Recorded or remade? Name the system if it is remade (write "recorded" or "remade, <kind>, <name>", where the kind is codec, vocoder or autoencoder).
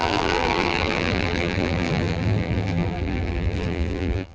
remade, vocoder, BigVGAN v2